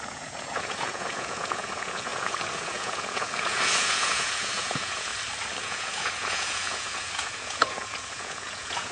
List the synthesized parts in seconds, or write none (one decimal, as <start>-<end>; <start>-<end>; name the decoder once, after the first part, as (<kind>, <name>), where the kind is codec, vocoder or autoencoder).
0.0-5.1 (vocoder, Vocos); 5.6-8.9